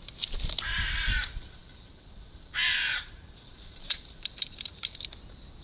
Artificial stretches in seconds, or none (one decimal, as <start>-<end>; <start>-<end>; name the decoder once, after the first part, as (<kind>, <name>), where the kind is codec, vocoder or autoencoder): 1.6-5.0 (vocoder, BigVGAN v2)